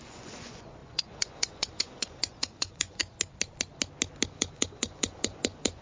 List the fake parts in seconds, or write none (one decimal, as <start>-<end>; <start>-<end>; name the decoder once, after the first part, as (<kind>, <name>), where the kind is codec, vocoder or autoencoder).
0.0-3.0 (vocoder, Vocos); 4.3-5.8